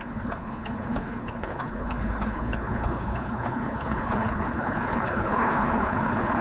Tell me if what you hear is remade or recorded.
remade